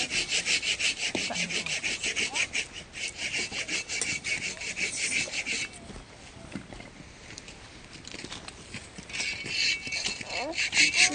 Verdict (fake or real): real